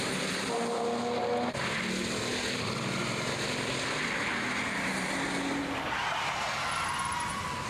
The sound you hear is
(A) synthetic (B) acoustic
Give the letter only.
B